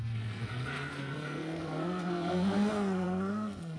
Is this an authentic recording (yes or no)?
no